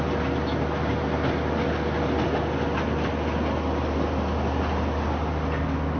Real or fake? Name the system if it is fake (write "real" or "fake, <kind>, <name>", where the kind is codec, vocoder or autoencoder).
real